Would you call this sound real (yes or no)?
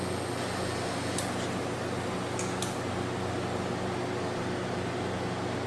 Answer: yes